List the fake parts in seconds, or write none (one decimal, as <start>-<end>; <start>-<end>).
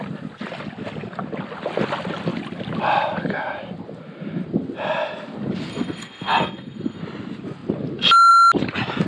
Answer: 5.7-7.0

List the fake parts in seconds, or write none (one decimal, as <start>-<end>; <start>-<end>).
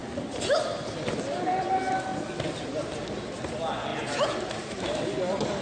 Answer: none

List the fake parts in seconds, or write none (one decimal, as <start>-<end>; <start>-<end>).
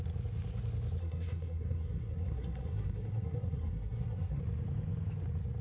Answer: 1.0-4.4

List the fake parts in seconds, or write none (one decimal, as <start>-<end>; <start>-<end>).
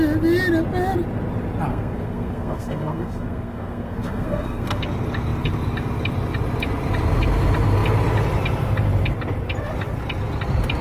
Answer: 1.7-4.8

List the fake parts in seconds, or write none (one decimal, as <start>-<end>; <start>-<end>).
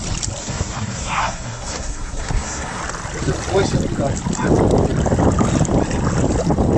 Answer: 0.4-2.8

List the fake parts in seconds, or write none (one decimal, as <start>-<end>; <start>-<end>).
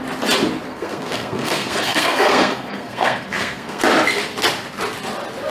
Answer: 0.7-3.8